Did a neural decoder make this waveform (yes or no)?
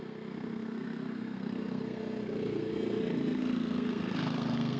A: yes